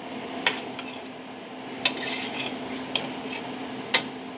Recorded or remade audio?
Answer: recorded